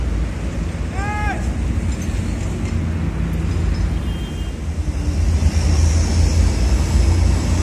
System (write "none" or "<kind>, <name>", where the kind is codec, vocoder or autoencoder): none